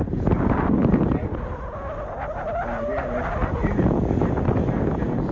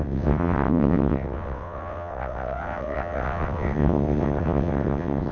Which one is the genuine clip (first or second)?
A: first